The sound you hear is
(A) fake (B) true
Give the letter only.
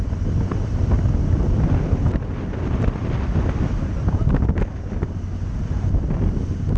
B